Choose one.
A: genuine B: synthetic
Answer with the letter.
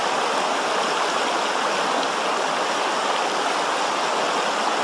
A